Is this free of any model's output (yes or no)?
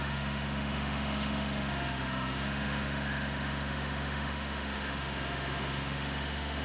no